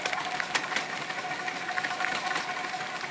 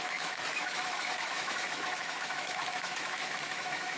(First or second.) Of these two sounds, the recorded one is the first